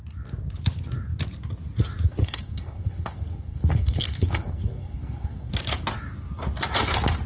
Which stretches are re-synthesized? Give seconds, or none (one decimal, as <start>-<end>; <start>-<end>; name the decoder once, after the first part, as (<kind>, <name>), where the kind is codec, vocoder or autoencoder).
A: 2.2-5.5 (codec, SNAC)